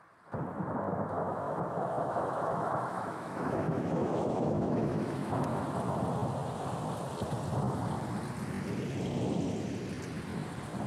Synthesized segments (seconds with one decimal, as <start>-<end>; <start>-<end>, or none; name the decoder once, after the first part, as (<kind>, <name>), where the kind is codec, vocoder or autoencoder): 0.9-5.6 (autoencoder, DAC-VAE)